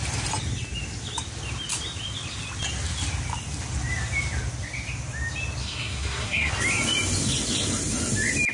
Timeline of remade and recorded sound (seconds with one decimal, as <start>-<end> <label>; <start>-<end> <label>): 0.0-5.6 recorded; 5.6-6.5 remade; 6.5-8.5 recorded